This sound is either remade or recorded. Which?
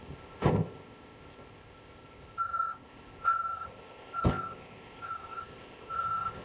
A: remade